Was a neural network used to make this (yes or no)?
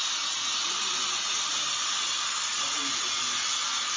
no